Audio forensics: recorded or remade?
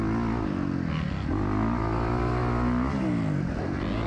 recorded